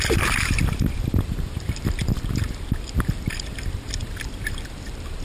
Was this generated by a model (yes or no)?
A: yes